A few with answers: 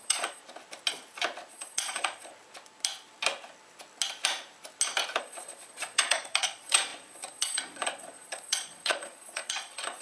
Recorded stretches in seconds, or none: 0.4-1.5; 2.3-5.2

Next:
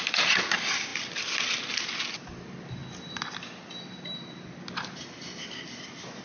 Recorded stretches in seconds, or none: 0.0-6.2

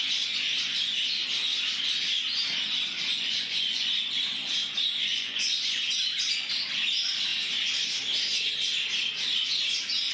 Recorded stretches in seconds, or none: 0.0-3.1; 4.1-5.1; 5.9-10.1

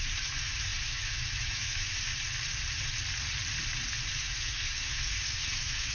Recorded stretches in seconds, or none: 2.1-4.1

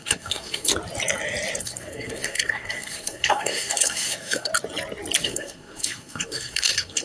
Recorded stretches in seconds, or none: 0.7-1.6; 4.5-5.2

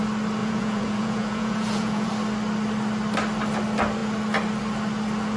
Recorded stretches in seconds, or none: 0.0-0.4; 2.1-5.4

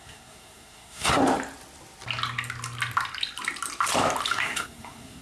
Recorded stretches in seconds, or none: 1.2-4.3